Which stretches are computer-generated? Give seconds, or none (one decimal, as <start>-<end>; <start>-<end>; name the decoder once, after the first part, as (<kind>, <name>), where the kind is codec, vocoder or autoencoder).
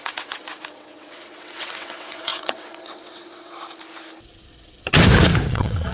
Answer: 0.0-3.5 (vocoder, WaveNeXt); 5.5-5.9